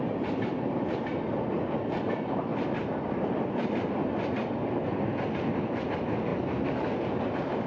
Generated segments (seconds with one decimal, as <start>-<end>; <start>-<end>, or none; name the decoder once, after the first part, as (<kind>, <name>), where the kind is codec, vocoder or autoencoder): none